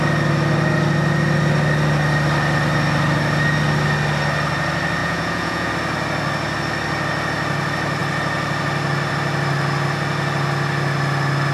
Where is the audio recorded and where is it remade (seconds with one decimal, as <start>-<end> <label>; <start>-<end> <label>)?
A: 0.0-5.0 recorded; 5.0-5.7 remade; 5.7-11.5 recorded